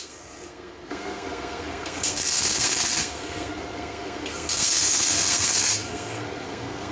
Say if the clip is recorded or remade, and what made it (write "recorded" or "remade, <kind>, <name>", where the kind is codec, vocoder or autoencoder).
remade, codec, SNAC